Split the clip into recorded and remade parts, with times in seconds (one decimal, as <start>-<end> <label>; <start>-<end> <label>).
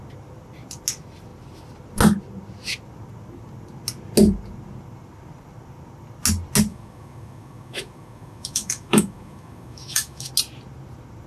0.0-6.7 recorded; 6.7-10.3 remade; 10.3-11.3 recorded